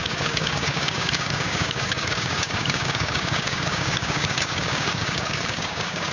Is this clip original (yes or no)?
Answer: no